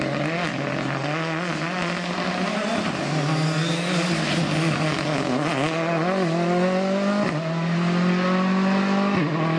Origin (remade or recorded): recorded